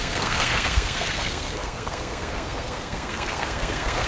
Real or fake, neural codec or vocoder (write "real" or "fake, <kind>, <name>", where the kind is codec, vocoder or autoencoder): fake, codec, SNAC